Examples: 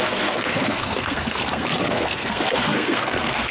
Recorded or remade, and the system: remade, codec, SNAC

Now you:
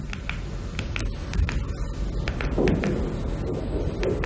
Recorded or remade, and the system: recorded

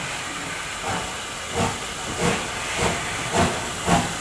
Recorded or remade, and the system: recorded